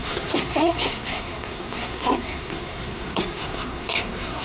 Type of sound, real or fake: fake